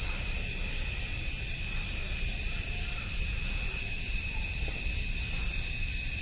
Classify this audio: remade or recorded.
remade